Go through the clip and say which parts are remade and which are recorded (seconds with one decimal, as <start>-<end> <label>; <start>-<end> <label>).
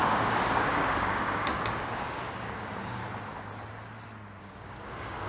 0.0-3.0 remade; 3.0-4.4 recorded; 4.4-5.3 remade